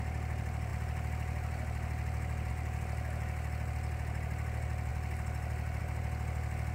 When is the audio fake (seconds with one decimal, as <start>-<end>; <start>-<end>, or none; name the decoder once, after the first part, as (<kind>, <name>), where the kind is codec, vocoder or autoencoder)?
none